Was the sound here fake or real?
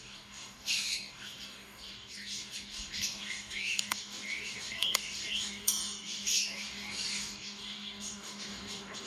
fake